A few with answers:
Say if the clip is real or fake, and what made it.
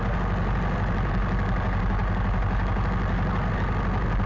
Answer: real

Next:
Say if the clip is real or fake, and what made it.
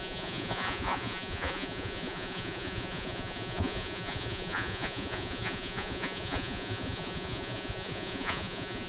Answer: fake, vocoder, Vocos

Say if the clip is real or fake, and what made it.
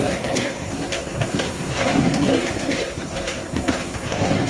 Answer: fake, codec, SNAC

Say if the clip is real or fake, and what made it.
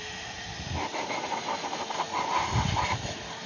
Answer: real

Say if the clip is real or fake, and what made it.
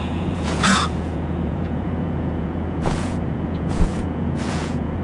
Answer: fake, vocoder, Vocos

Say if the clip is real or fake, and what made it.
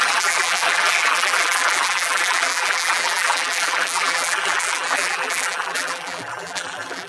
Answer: fake, vocoder, BigVGAN v2